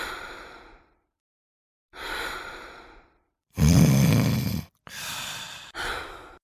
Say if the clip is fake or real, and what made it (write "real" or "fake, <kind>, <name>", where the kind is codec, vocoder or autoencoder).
fake, vocoder, BigVGAN v2